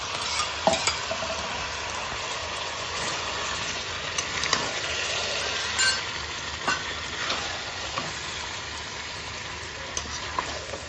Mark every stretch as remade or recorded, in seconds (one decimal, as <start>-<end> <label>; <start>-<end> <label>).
0.0-2.4 recorded; 2.4-4.2 remade; 4.2-7.2 recorded; 7.2-8.1 remade; 8.1-10.9 recorded